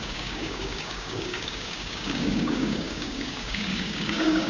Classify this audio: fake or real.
fake